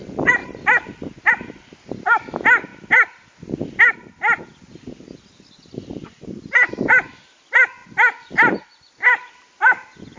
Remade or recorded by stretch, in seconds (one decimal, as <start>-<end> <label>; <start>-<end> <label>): 0.0-10.2 recorded